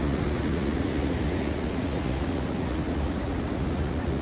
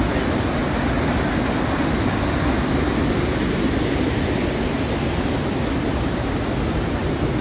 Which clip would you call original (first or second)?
second